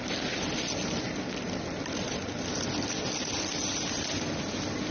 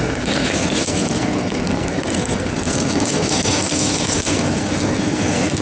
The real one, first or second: first